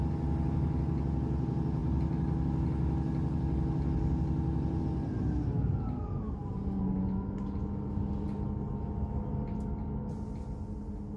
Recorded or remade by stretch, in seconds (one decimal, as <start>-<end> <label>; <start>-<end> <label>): 0.0-11.2 recorded